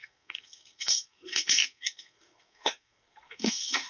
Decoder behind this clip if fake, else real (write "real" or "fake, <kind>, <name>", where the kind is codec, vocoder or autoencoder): fake, codec, SNAC